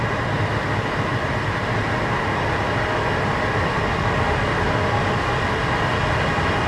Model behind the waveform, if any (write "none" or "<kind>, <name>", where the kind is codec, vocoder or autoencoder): none